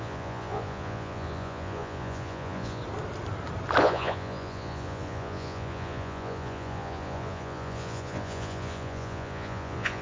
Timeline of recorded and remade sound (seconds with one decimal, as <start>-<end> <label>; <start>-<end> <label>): 0.0-2.8 remade; 2.8-3.8 recorded; 3.8-10.0 remade

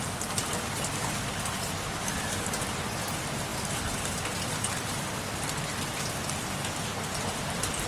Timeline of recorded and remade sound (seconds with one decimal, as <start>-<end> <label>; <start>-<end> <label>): 0.0-7.9 recorded

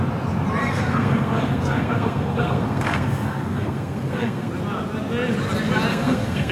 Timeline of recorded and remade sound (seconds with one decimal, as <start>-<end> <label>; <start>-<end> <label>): 0.0-0.6 recorded; 0.6-4.5 remade; 4.5-5.9 recorded; 5.9-6.5 remade

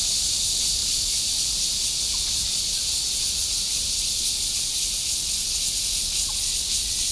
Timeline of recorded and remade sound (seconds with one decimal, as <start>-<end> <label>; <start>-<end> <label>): 0.0-7.1 recorded

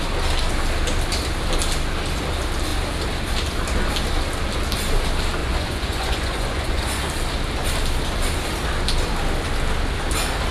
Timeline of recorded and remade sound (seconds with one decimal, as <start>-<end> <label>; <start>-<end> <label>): 0.0-5.4 recorded; 5.4-7.0 remade; 7.0-10.5 recorded

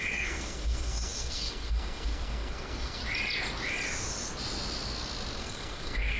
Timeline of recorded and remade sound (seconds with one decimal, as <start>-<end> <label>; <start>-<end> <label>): 0.0-3.0 remade; 3.0-5.4 recorded; 5.4-6.2 remade